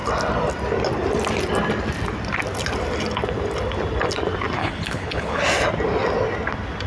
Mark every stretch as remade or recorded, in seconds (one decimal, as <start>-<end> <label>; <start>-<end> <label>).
0.0-4.6 recorded; 4.6-5.4 remade; 5.4-6.9 recorded